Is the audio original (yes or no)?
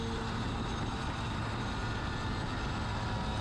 yes